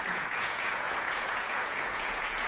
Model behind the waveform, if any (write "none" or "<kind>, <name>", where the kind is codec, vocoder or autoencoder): vocoder, Vocos